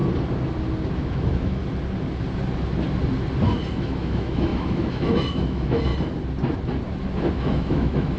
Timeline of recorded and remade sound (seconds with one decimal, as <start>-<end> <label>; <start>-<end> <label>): 0.0-0.9 recorded; 0.9-1.6 remade; 1.6-3.7 recorded; 3.7-5.9 remade; 5.9-7.3 recorded; 7.3-8.2 remade

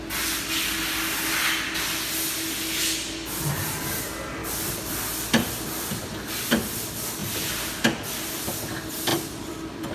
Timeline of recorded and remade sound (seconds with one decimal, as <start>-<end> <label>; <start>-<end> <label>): 0.0-4.4 recorded; 4.4-6.5 remade; 6.5-7.2 recorded; 7.2-8.4 remade; 8.4-9.1 recorded; 9.1-9.9 remade

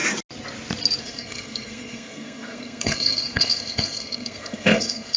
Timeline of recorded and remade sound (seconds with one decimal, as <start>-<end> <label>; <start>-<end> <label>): 0.0-1.0 recorded; 1.0-5.2 remade

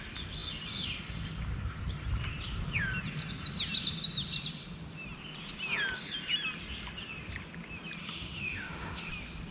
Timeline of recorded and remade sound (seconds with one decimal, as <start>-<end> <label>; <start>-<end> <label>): 0.0-8.0 recorded; 8.0-9.1 remade; 9.1-9.5 recorded

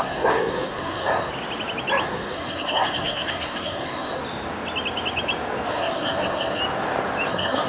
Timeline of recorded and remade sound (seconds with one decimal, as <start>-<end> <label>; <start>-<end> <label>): 0.0-1.3 remade; 1.3-2.0 recorded; 2.0-4.2 remade; 4.2-5.7 recorded; 5.7-6.6 remade; 6.6-7.3 recorded; 7.3-7.7 remade

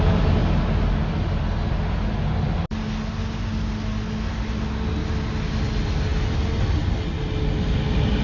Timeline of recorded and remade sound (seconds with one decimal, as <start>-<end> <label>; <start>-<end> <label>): 0.0-8.2 recorded